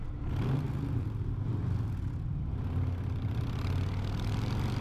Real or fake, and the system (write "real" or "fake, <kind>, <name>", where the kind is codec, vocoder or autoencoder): real